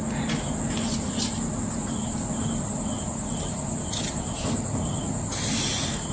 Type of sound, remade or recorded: recorded